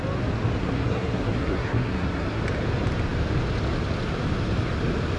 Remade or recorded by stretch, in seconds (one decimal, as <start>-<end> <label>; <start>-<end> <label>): 0.0-0.6 recorded; 0.6-2.4 remade; 2.4-5.2 recorded